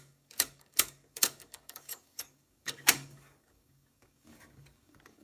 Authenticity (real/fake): fake